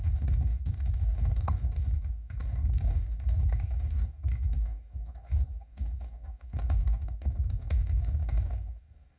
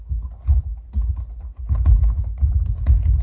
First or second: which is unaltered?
second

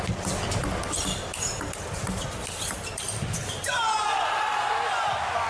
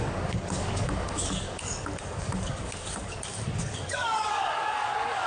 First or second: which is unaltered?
first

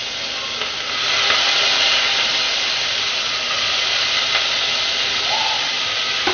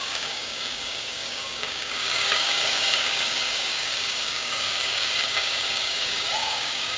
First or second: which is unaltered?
first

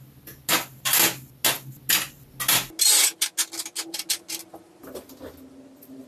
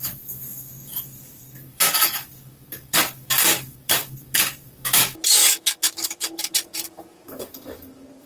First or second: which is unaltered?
first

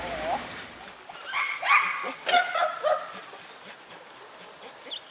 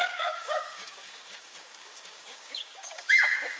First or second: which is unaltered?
first